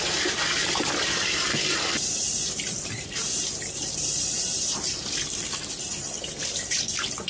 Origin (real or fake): fake